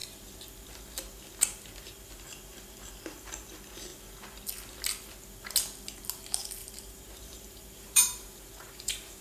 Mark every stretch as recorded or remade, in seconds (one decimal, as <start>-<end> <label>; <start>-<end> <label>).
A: 0.0-6.6 recorded; 6.6-9.2 remade